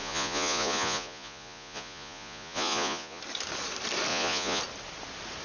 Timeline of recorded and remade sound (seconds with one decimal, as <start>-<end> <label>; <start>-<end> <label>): 0.0-3.2 remade; 3.2-4.1 recorded; 4.1-4.6 remade; 4.6-5.4 recorded

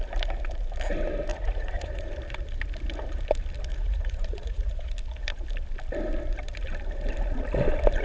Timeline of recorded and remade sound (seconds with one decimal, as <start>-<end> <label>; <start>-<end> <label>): 0.0-1.3 recorded; 1.3-2.1 remade; 2.1-3.7 recorded; 3.7-4.9 remade; 4.9-8.0 recorded

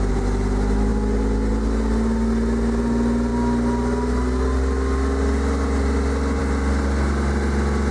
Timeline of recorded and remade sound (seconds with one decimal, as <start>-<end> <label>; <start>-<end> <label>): 0.0-7.9 recorded

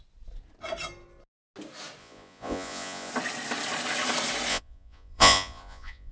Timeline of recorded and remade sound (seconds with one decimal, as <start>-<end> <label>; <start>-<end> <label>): 0.0-2.0 recorded; 2.0-3.1 remade; 3.1-4.5 recorded; 4.5-6.1 remade